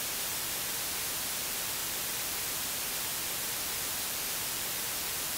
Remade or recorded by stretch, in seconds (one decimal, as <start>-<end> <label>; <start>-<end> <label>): 0.0-5.4 remade